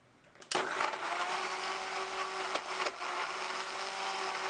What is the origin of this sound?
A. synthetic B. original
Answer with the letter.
B